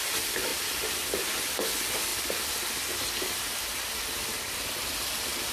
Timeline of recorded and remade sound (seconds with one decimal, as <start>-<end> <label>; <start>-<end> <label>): 0.0-5.5 recorded